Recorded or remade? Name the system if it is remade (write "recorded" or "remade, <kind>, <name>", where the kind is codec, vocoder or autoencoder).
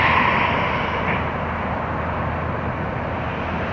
recorded